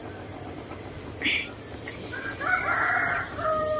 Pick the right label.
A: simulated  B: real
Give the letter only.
B